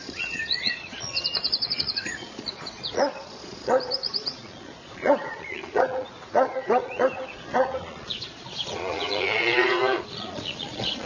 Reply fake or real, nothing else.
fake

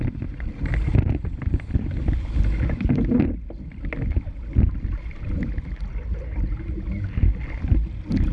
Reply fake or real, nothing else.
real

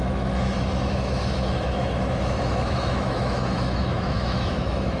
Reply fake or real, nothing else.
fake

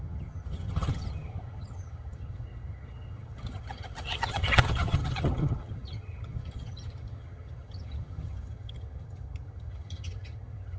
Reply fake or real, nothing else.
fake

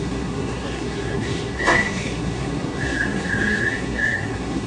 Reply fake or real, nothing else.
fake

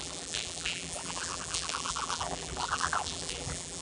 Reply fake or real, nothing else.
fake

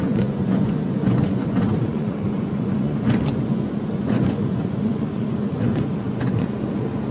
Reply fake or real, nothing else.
fake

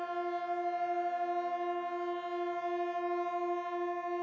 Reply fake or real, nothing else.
real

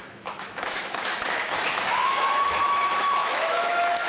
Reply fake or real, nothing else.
fake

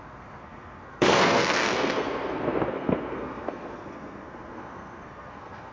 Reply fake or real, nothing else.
fake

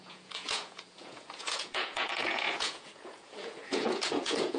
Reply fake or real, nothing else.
fake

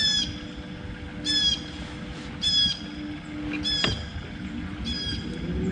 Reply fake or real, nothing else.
real